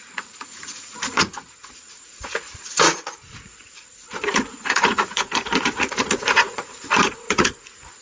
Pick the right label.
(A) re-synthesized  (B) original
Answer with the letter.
A